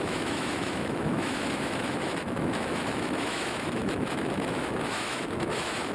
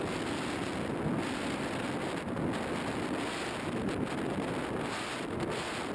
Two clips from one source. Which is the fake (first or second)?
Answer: first